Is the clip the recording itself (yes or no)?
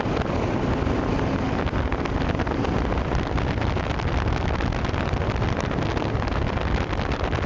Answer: yes